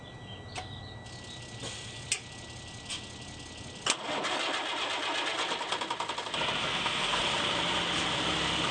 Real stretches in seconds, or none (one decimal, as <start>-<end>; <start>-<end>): 0.0-6.6; 7.2-8.7